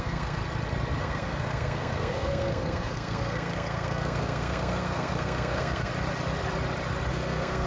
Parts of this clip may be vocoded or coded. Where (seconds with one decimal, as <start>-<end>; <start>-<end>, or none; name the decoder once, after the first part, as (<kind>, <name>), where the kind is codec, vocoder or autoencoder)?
0.0-0.4 (codec, SNAC); 1.0-5.9; 7.1-7.7